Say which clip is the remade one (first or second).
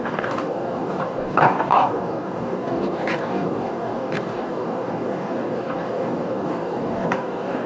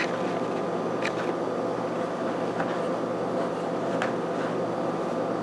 first